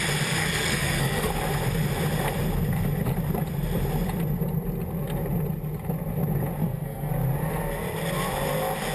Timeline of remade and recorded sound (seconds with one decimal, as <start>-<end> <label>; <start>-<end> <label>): 0.0-0.4 recorded; 0.4-1.3 remade; 1.3-6.6 recorded; 6.6-7.1 remade; 7.1-8.9 recorded